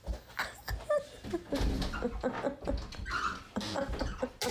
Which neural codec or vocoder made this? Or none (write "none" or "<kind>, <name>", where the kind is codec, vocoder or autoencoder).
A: none